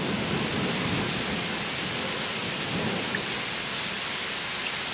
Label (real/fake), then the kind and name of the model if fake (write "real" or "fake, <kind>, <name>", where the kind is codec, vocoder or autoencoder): real